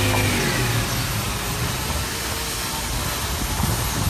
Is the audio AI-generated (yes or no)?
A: no